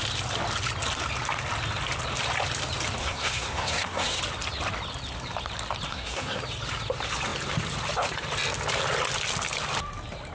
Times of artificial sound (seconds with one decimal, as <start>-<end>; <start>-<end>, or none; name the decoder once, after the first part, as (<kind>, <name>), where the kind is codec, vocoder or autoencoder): 3.0-4.2 (codec, SNAC); 5.9-6.4